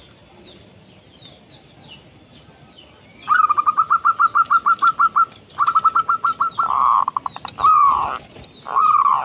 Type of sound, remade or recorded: recorded